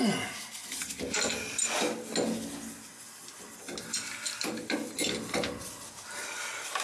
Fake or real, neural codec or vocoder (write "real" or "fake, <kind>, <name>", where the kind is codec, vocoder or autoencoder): real